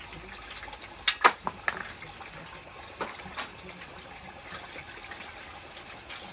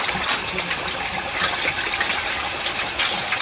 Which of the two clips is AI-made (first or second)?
second